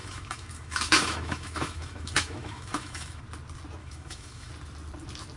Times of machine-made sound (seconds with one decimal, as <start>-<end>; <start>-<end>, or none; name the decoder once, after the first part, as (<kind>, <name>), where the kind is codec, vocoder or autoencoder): 0.0-3.2 (autoencoder, DAC-VAE); 3.8-4.5